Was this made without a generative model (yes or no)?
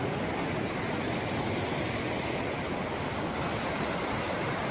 yes